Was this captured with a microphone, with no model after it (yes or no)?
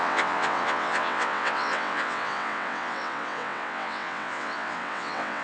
no